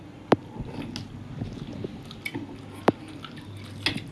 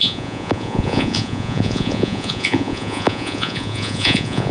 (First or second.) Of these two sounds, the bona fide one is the first